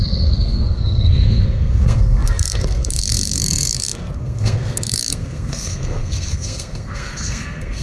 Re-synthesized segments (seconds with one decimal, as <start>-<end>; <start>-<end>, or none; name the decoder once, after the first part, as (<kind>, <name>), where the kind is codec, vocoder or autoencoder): 0.0-7.8 (codec, SNAC)